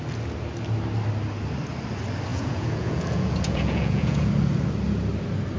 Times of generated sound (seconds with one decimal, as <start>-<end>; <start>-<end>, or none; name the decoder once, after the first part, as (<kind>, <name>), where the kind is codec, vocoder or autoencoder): 2.3-4.3 (vocoder, Vocos)